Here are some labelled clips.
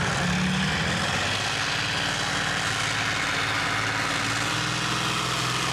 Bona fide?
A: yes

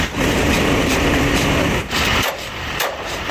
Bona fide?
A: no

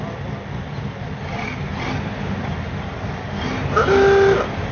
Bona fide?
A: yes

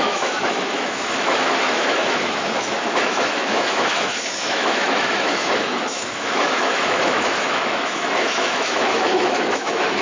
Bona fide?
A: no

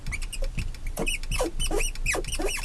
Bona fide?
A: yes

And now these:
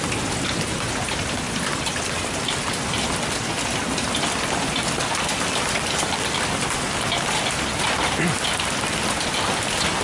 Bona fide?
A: yes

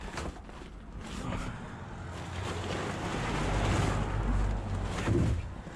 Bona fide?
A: yes